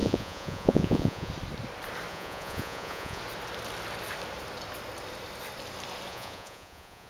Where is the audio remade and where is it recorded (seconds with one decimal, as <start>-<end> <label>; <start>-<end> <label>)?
0.0-1.3 remade; 1.3-2.1 recorded; 2.1-3.2 remade; 3.2-6.1 recorded; 6.1-7.1 remade